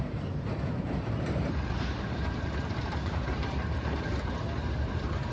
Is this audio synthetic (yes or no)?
yes